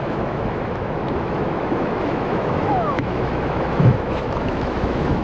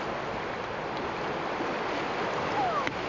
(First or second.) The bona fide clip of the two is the second